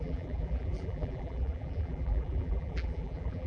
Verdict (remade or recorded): remade